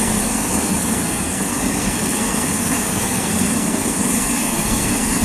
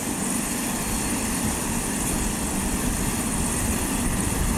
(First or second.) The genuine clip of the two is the second